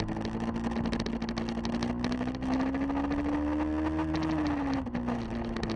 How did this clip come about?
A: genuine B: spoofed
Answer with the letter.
A